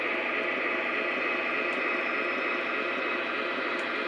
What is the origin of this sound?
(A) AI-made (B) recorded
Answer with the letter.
B